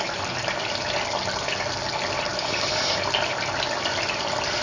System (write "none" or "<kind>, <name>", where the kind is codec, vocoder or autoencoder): none